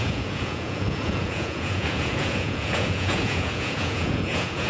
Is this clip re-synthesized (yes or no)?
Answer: yes